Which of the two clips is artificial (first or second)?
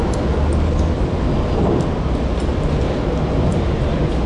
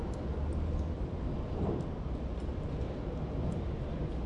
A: second